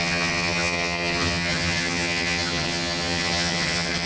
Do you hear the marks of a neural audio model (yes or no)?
yes